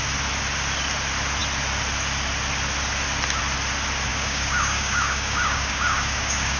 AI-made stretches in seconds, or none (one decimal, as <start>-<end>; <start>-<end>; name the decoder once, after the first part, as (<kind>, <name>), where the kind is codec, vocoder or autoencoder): 4.1-6.6 (codec, DAC)